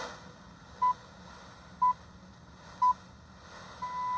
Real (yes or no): yes